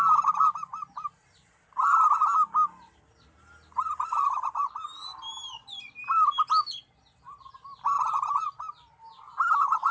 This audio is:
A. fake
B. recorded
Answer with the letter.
B